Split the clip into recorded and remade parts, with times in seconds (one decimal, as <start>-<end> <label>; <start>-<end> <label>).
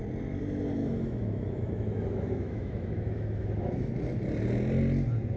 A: 0.0-0.8 recorded; 0.8-3.9 remade; 3.9-5.4 recorded